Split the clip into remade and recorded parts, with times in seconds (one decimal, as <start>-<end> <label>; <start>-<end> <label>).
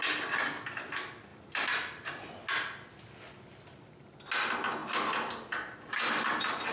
0.0-6.7 recorded